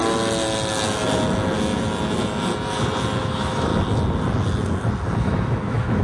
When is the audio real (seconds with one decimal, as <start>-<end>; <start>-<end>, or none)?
0.0-3.2; 3.7-5.2